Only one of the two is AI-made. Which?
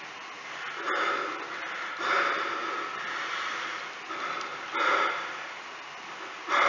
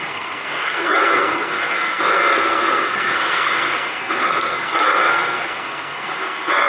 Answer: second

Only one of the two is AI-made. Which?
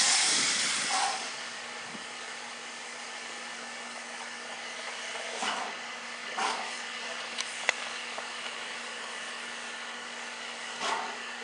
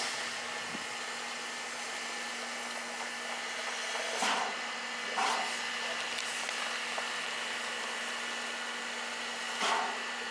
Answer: first